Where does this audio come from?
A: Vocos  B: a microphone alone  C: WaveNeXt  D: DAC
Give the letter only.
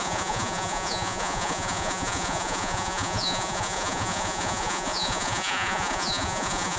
A